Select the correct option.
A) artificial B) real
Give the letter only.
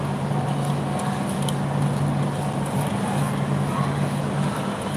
B